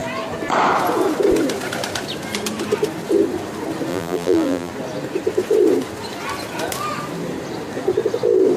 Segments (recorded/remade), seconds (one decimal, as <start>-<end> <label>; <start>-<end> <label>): 0.0-3.9 recorded; 3.9-4.7 remade; 4.7-8.6 recorded